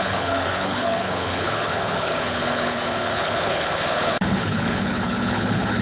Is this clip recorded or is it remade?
remade